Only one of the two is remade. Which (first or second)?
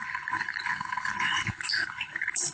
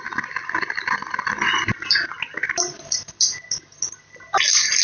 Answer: first